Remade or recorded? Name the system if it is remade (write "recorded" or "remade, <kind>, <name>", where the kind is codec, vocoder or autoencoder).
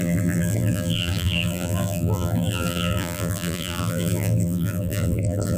remade, vocoder, BigVGAN v2